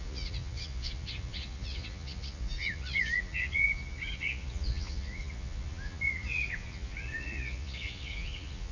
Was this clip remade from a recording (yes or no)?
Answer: yes